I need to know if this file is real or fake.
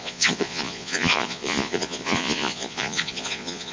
fake